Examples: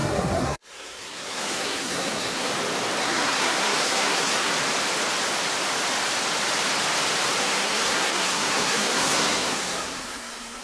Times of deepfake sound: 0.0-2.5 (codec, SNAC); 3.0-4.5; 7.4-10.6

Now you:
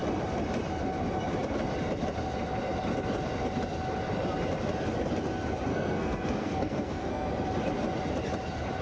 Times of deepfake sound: 5.7-7.3 (codec, SNAC)

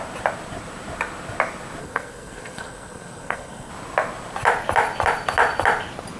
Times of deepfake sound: 1.8-3.7 (codec, SNAC)

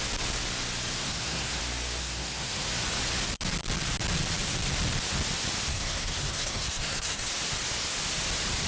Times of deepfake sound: 0.9-1.6 (codec, SNAC); 2.0-2.7; 5.7-7.3

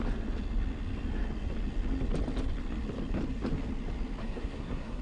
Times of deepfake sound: 4.2-5.0 (codec, SNAC)